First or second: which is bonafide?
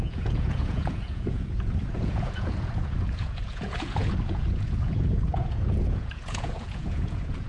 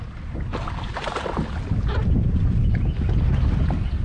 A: second